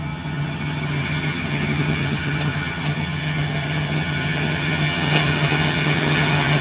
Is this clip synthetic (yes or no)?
yes